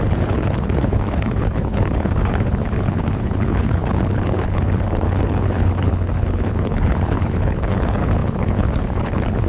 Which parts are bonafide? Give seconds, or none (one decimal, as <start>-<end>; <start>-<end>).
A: none